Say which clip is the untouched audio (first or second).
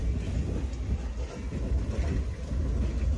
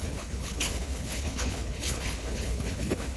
first